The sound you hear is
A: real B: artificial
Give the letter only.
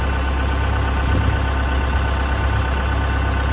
A